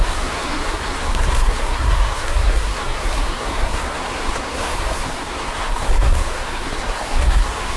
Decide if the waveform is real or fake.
fake